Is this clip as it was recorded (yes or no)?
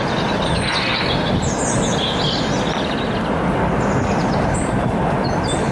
yes